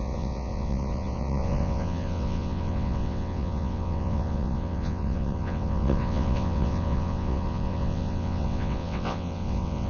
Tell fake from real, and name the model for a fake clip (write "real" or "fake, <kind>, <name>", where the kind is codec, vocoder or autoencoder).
fake, vocoder, WaveNeXt